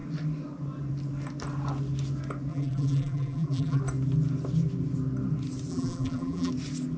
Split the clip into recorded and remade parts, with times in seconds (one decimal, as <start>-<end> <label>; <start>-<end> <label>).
0.0-2.5 recorded; 2.5-3.8 remade; 3.8-5.7 recorded; 5.7-6.5 remade; 6.5-7.0 recorded